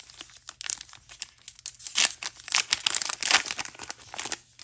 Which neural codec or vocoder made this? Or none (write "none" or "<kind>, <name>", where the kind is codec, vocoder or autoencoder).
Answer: none